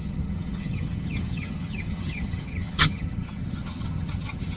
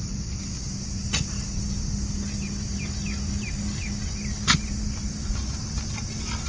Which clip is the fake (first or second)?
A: first